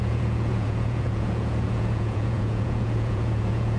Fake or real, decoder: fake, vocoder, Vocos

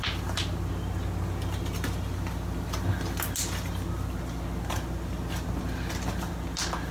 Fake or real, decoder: real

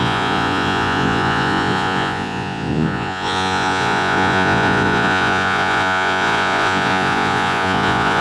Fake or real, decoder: fake, vocoder, Vocos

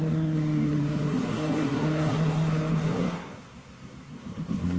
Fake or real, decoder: fake, codec, SNAC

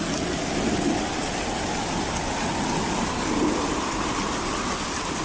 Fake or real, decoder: real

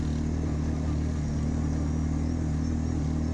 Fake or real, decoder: real